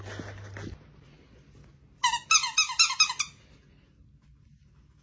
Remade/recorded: recorded